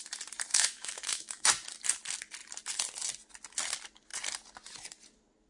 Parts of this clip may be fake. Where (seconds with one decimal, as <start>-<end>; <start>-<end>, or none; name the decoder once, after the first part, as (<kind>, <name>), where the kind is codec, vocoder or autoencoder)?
0.5-1.5 (autoencoder, DAC-VAE)